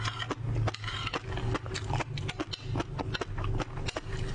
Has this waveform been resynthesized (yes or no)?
no